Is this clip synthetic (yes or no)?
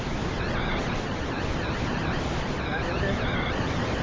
no